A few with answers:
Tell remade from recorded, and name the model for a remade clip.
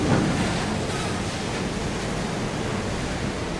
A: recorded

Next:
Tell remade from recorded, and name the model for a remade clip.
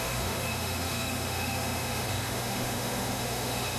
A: remade, autoencoder, DAC-VAE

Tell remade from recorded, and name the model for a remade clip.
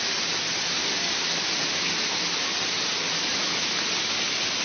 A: recorded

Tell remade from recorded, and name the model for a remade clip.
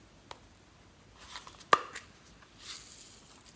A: recorded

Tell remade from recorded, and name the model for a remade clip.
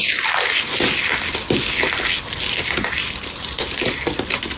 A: recorded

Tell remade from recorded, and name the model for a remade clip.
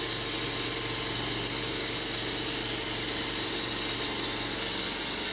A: recorded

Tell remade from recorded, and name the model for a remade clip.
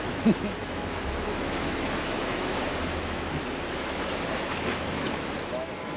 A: remade, autoencoder, DAC-VAE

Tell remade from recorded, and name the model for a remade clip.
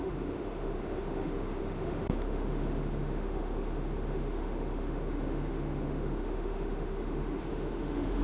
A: remade, autoencoder, DAC-VAE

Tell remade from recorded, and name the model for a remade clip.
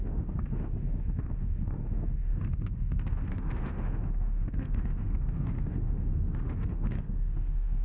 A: remade, autoencoder, DAC-VAE